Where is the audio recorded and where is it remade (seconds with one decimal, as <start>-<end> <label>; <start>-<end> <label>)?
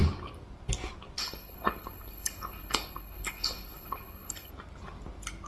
0.0-1.2 recorded; 1.2-4.5 remade; 4.5-5.5 recorded